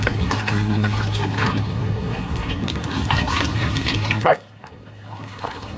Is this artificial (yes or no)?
yes